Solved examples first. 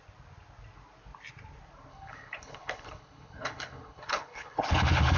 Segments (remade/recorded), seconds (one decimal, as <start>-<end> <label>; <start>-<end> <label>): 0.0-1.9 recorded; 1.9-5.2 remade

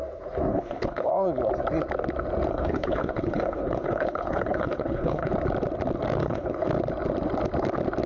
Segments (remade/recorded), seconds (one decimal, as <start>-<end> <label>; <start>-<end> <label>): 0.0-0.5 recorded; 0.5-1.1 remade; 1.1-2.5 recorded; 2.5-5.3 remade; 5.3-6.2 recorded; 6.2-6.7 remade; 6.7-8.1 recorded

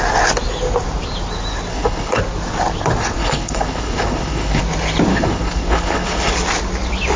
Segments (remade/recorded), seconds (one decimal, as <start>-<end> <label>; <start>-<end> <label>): 0.0-1.7 recorded; 1.7-2.2 remade; 2.2-3.2 recorded; 3.2-4.6 remade; 4.6-5.1 recorded; 5.1-6.3 remade; 6.3-7.2 recorded

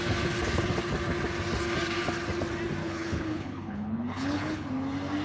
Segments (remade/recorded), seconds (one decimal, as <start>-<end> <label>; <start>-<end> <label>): 0.0-2.8 recorded; 2.8-4.7 remade; 4.7-5.2 recorded

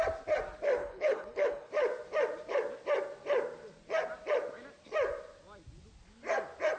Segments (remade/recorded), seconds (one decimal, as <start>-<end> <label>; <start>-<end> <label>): 0.0-0.8 recorded; 0.8-1.7 remade; 1.7-6.8 recorded

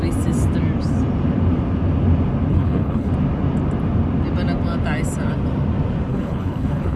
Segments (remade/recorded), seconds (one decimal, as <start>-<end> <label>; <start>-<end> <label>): 0.0-2.5 recorded; 2.5-3.1 remade; 3.1-6.1 recorded; 6.1-7.0 remade